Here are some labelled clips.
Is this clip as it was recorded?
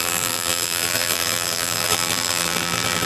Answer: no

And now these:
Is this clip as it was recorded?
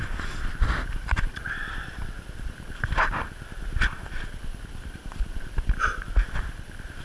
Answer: no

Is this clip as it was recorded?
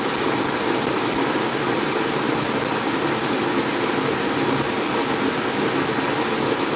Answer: yes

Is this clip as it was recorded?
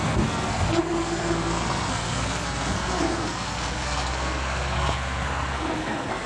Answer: no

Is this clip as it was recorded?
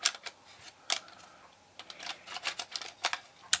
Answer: yes